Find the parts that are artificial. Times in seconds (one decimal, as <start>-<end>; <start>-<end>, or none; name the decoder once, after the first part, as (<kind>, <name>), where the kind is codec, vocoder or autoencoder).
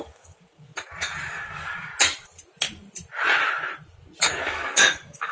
0.0-0.7 (codec, DAC); 1.3-1.9; 4.2-5.3